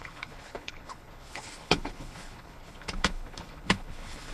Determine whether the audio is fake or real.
fake